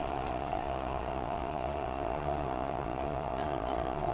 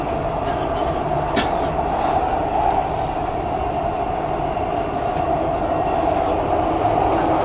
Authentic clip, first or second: second